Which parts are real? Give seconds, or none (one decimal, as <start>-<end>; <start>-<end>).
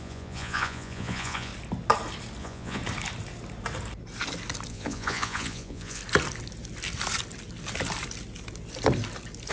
1.5-2.4; 2.8-4.7; 6.0-9.5